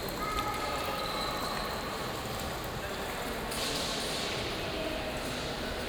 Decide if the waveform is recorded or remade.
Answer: recorded